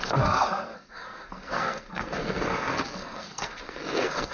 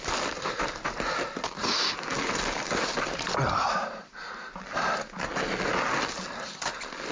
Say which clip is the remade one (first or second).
first